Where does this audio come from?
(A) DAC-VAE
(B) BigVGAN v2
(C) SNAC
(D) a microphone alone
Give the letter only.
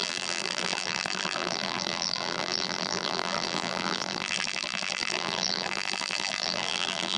B